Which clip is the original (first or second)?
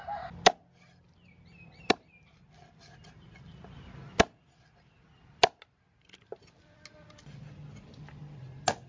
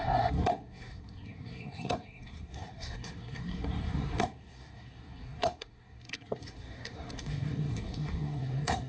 first